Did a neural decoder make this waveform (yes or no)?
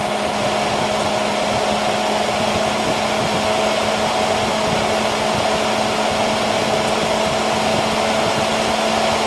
no